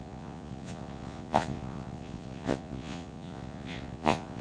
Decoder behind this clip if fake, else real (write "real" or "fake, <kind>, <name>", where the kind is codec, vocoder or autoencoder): fake, vocoder, Vocos